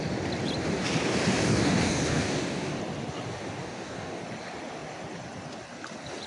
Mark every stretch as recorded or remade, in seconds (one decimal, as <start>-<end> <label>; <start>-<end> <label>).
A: 0.0-1.4 recorded; 1.4-2.8 remade; 2.8-3.6 recorded; 3.6-4.2 remade; 4.2-6.3 recorded